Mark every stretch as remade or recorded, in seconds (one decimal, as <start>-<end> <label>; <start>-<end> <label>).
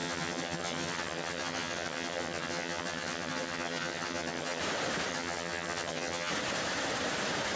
0.0-4.6 remade; 4.6-5.1 recorded; 5.1-6.3 remade; 6.3-7.6 recorded